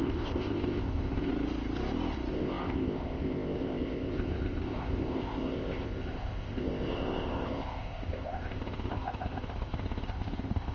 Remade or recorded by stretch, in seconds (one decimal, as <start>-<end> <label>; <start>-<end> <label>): 0.0-1.3 remade; 1.3-2.3 recorded; 2.3-10.7 remade